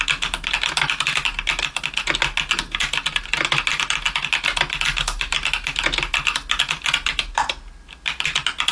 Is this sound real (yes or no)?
yes